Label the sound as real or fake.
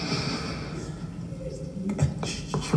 real